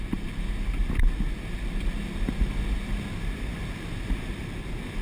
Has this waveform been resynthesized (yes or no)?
no